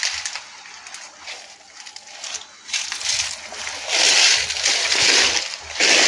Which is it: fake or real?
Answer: real